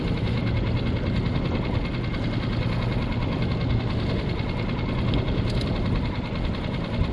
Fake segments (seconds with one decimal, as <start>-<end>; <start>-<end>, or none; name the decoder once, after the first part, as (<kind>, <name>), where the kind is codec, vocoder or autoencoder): none